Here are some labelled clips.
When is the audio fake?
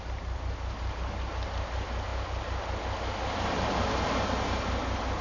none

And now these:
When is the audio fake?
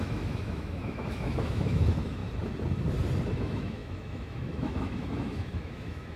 0.0-2.2 (autoencoder, DAC-VAE); 3.4-6.2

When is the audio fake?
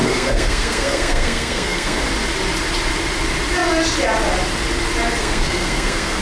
0.0-2.0 (codec, SNAC); 5.2-6.2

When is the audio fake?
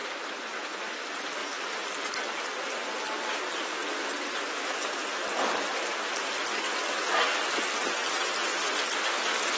0.0-0.8 (vocoder, BigVGAN v2); 1.4-4.9